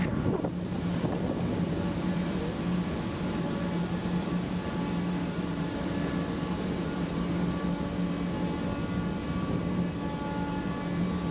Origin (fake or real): real